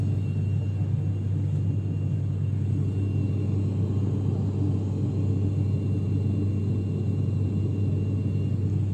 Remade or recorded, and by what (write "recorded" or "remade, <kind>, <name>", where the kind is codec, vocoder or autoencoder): recorded